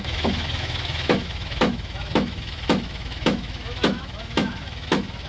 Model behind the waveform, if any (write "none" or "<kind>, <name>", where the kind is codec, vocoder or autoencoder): autoencoder, DAC-VAE